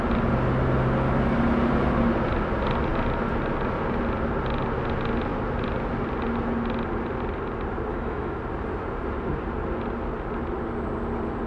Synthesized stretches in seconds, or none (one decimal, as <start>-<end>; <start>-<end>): 7.9-8.4